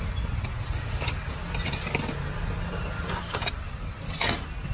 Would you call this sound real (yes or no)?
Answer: yes